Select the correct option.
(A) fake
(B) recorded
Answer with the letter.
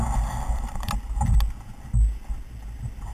B